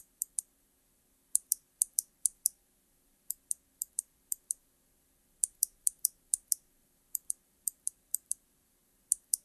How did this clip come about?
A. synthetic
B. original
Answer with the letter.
A